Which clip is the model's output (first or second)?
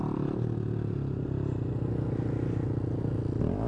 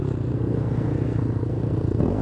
second